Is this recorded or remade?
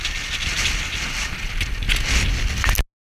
recorded